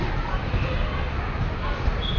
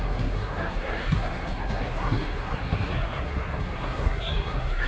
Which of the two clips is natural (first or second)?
first